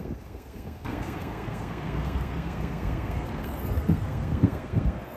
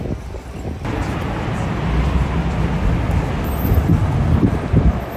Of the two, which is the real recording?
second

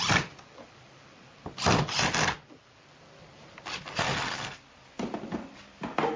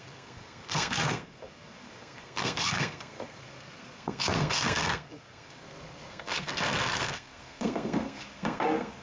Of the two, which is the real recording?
first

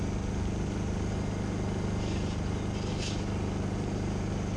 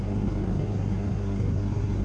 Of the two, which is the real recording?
first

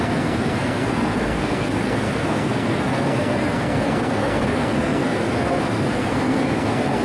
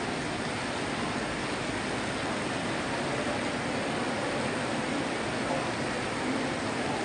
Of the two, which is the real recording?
second